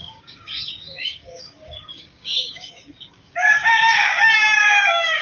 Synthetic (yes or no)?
yes